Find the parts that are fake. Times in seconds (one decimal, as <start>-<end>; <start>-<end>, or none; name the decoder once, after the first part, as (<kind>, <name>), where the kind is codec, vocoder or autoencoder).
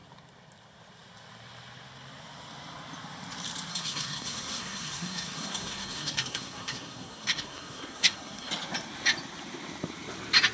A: 3.7-8.5 (codec, SNAC)